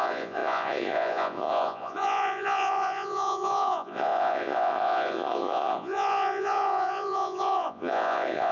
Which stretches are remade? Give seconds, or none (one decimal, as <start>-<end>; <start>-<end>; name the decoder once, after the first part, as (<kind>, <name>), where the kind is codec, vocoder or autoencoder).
0.0-8.5 (vocoder, Vocos)

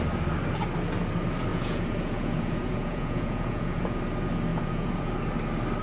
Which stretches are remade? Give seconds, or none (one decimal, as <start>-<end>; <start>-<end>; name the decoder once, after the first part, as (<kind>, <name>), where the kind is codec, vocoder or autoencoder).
1.5-4.0 (vocoder, Vocos); 4.5-5.1

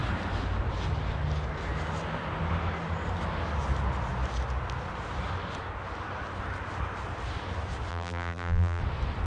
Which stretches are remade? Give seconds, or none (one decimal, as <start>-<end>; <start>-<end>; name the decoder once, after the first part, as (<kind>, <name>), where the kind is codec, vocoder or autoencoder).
7.9-8.8 (vocoder, BigVGAN v2)

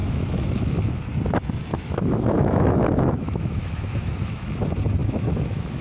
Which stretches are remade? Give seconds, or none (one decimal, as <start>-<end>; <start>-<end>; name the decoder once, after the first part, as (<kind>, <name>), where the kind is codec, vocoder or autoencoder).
0.0-1.0 (autoencoder, DAC-VAE); 1.7-4.5; 5.0-5.8